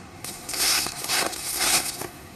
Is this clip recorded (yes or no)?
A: no